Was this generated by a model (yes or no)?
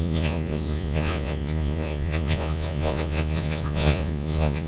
yes